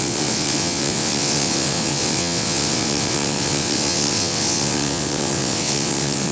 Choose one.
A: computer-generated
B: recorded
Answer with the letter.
A